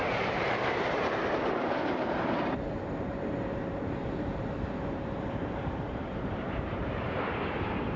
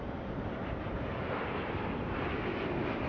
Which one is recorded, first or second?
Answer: second